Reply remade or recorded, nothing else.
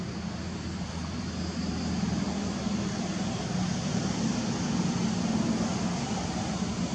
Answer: recorded